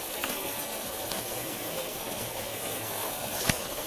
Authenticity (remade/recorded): remade